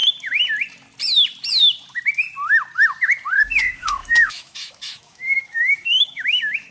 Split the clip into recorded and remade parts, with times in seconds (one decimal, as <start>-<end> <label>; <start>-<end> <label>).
0.0-3.4 recorded; 3.4-6.7 remade